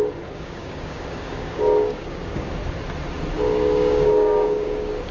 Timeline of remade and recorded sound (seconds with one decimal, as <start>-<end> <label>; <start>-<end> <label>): 0.0-2.6 remade; 2.6-3.5 recorded; 3.5-5.1 remade